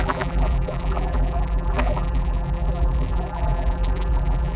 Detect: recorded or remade remade